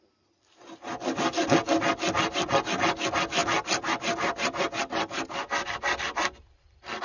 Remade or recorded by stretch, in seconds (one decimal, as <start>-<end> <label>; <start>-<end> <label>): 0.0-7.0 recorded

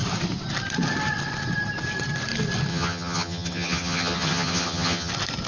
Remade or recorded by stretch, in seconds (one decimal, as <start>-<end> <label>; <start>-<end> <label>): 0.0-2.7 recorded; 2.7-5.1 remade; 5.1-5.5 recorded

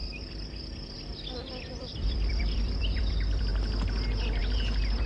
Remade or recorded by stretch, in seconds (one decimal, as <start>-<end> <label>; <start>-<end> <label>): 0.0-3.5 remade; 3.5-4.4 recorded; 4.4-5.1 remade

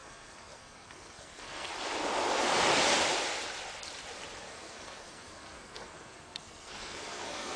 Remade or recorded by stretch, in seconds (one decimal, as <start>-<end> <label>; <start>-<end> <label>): 0.0-1.7 remade; 1.7-4.4 recorded; 4.4-7.6 remade

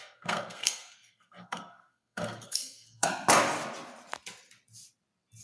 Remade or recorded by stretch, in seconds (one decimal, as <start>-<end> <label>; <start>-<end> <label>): 0.0-3.1 remade; 3.1-5.4 recorded

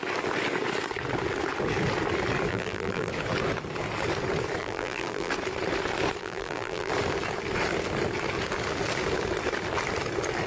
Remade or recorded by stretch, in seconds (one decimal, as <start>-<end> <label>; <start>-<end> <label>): 0.0-2.5 recorded; 2.5-3.1 remade; 3.1-4.6 recorded; 4.6-5.3 remade; 5.3-6.2 recorded; 6.2-6.9 remade; 6.9-10.5 recorded

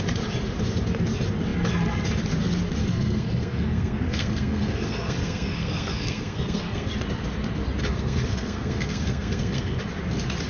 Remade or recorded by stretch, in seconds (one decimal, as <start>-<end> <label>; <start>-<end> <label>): 0.0-2.8 recorded; 2.8-6.9 remade; 6.9-7.8 recorded; 7.8-9.8 remade; 9.8-10.5 recorded